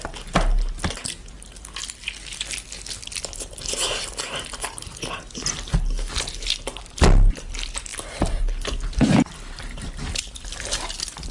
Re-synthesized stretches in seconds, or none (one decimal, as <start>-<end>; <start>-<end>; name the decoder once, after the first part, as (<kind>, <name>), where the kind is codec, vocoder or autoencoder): 7.9-11.3 (vocoder, BigVGAN v2)